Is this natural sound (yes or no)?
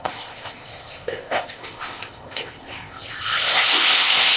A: no